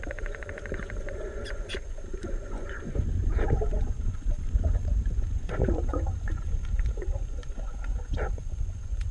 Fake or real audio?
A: fake